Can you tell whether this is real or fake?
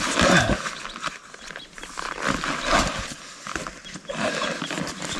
real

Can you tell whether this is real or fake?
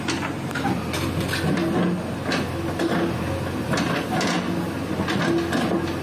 real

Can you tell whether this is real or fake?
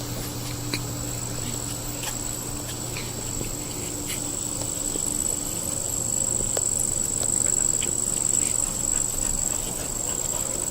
real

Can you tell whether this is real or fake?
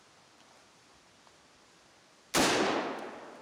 real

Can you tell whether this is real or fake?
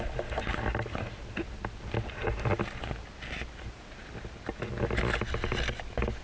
real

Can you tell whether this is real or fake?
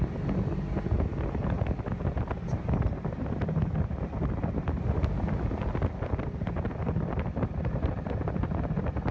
real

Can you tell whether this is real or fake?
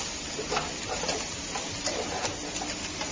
real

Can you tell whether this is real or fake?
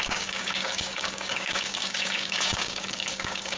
fake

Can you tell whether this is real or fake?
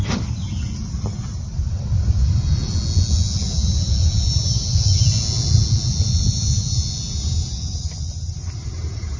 real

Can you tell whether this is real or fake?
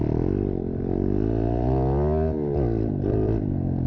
real